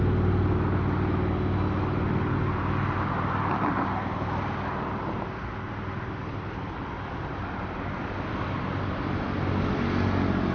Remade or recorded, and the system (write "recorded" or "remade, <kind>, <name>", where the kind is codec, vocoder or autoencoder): recorded